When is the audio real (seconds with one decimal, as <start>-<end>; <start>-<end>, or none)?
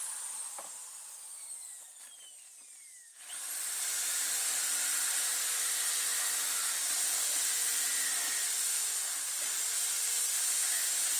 0.0-11.2